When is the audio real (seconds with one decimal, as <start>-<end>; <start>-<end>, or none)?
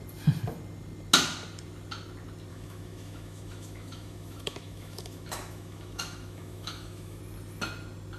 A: 0.0-2.5; 7.2-8.2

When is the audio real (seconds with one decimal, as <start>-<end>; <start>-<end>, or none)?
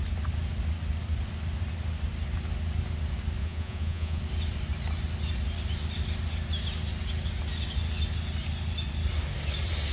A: 0.0-3.4; 4.2-9.9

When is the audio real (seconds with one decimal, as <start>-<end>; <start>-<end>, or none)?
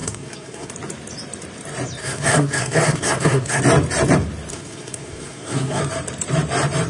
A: 0.7-2.0; 3.6-4.5; 5.8-6.9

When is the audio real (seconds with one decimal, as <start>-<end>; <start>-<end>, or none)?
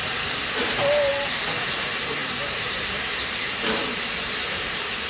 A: none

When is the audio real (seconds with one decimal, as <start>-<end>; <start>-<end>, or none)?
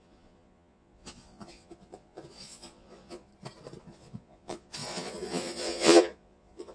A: 3.3-3.8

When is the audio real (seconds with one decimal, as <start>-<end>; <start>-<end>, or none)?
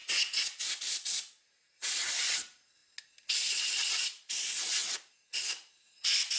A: 0.0-6.4